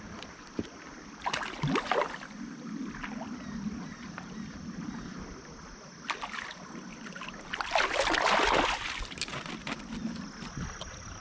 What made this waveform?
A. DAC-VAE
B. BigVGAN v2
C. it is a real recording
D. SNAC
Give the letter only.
C